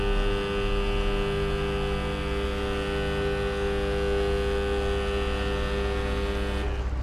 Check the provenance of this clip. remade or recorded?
recorded